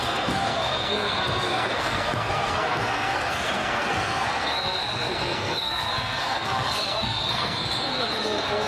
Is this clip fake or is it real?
fake